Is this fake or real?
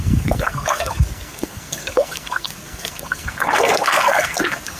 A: fake